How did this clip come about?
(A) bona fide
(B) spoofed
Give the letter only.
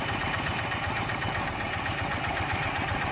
A